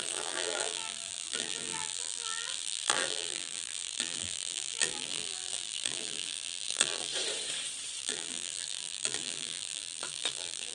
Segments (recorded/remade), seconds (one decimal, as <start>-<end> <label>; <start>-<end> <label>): 0.0-7.1 remade; 7.1-8.0 recorded; 8.0-10.7 remade